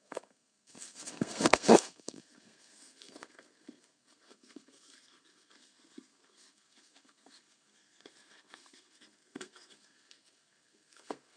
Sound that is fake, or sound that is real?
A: fake